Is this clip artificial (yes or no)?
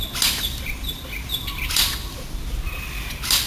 no